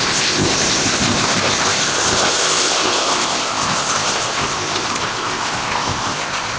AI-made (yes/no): yes